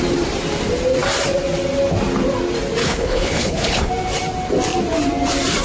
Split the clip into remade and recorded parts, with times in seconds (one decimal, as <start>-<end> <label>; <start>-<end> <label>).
0.0-2.8 recorded; 2.8-3.9 remade; 3.9-5.6 recorded